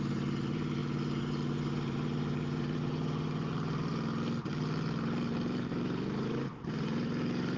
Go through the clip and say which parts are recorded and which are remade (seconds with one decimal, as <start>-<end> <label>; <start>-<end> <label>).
0.0-3.9 remade; 3.9-5.6 recorded; 5.6-7.6 remade